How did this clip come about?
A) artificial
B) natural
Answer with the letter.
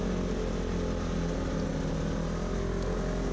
B